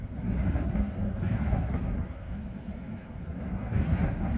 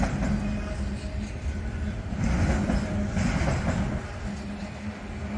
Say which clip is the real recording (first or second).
second